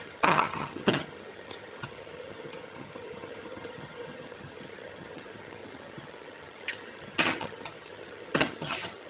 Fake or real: fake